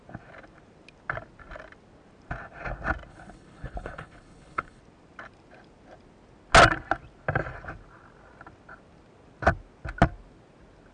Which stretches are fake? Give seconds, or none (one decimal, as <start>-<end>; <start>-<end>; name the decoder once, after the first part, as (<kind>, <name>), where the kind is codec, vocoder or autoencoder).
3.1-4.8 (codec, HILCodec)